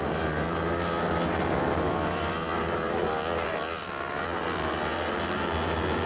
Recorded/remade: recorded